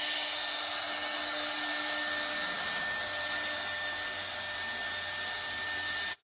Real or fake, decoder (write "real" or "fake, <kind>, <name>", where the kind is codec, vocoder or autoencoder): real